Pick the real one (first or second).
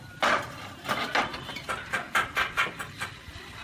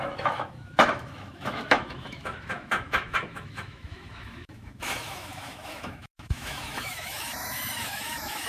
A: first